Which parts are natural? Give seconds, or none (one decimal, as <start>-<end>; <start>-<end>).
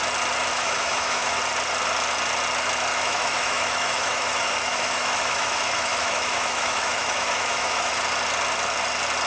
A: 0.0-0.5; 1.4-2.9; 8.0-9.3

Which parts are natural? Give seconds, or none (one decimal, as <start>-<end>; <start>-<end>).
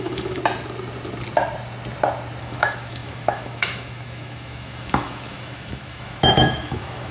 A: 0.4-2.4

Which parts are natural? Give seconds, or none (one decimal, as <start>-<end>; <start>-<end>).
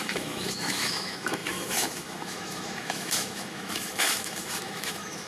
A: none